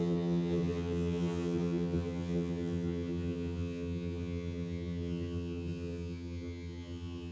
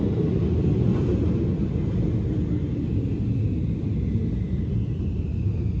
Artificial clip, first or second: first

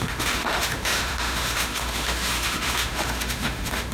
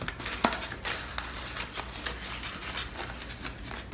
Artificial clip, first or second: first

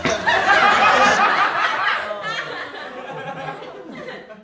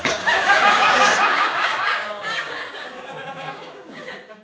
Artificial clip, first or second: second